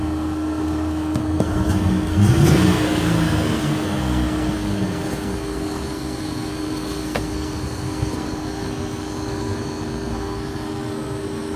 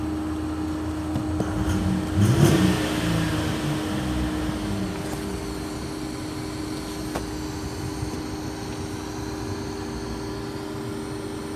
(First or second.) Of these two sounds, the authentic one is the second